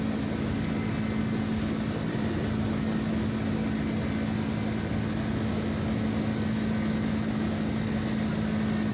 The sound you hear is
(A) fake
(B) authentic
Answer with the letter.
B